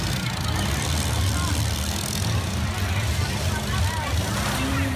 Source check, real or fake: real